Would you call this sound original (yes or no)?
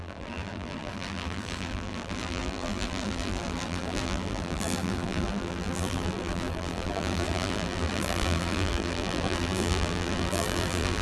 no